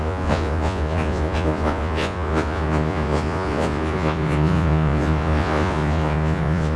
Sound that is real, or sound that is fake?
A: fake